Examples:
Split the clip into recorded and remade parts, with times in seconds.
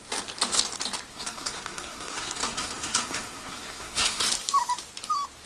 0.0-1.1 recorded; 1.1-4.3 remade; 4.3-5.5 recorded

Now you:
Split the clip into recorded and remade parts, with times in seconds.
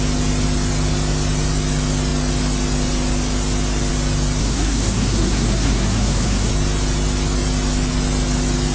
0.0-4.4 recorded; 4.4-6.5 remade; 6.5-8.7 recorded